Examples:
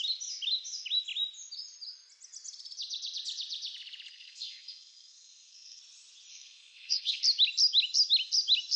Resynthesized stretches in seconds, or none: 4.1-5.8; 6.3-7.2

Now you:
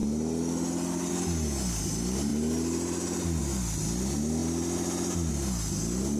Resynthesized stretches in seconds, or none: none